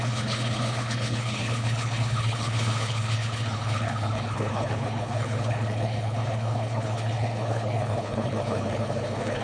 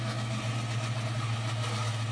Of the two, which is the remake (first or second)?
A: first